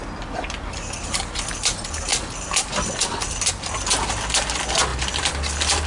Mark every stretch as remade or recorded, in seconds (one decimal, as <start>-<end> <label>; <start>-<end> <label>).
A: 0.0-5.9 recorded